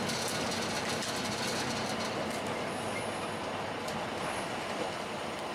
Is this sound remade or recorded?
recorded